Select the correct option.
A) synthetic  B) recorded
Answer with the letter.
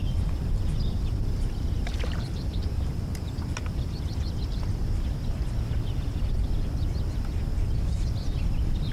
A